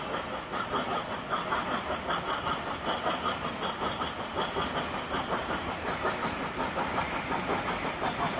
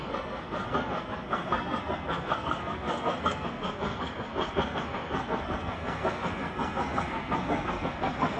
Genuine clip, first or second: first